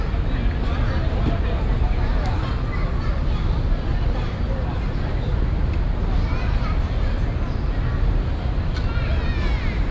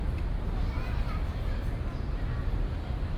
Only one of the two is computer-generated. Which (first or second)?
second